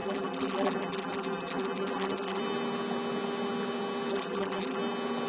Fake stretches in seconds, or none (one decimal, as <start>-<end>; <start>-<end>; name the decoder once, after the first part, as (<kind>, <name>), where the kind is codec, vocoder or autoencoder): 0.0-2.4 (vocoder, BigVGAN v2); 4.1-4.8